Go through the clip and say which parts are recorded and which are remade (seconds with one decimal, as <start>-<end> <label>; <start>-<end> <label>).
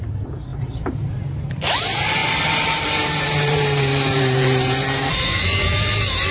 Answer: 0.0-2.2 remade; 2.2-2.8 recorded; 2.8-6.3 remade